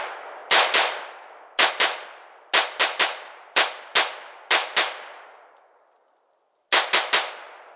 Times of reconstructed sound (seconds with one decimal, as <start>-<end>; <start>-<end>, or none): none